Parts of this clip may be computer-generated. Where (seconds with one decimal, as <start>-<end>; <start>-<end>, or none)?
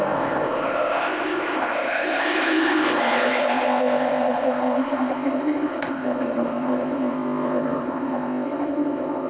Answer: 0.0-9.3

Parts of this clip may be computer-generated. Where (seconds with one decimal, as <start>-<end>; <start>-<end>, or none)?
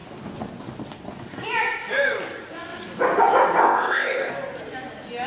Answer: 3.6-4.3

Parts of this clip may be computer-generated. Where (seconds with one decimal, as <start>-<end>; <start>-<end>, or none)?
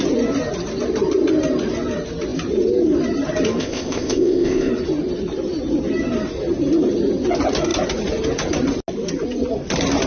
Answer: 3.6-4.7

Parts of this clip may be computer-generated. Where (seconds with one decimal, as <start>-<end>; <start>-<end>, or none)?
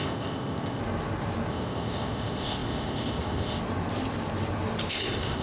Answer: 0.0-0.8; 1.5-3.6; 4.9-5.4